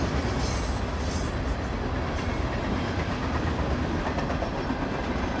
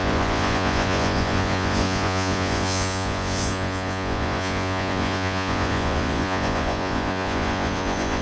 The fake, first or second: second